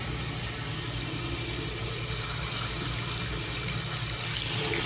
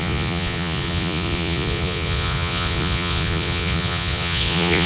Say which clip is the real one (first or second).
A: first